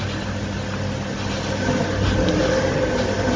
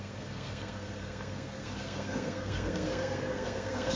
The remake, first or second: second